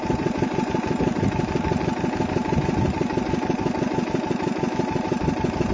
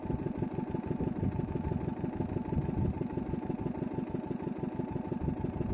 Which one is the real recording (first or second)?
second